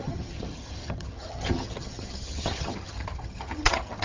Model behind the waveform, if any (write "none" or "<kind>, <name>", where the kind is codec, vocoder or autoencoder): vocoder, HiFi-GAN